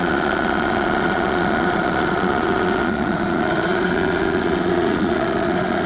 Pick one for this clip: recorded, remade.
remade